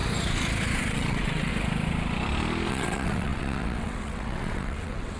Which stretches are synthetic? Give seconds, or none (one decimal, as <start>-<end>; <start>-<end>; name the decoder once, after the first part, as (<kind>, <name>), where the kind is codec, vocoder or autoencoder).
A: 0.9-1.5 (vocoder, WaveNeXt); 2.7-5.2